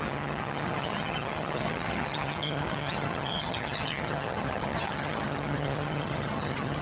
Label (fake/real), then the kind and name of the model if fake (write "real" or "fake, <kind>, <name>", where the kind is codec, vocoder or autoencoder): fake, vocoder, HiFi-GAN